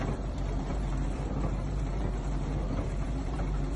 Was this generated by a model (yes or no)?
yes